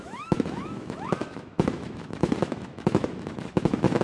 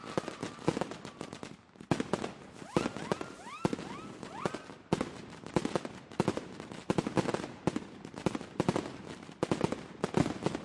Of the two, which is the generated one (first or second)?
first